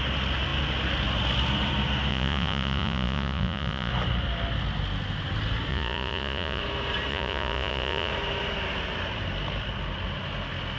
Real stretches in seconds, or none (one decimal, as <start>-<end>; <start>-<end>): 0.0-2.1; 3.9-5.7; 6.6-7.1; 8.1-10.8